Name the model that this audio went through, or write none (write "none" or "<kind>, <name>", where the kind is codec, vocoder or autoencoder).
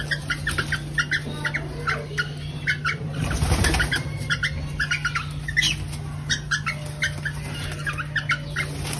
none